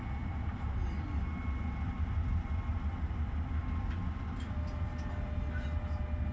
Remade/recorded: recorded